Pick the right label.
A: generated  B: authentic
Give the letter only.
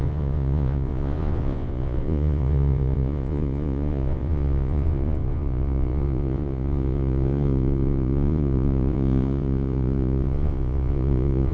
A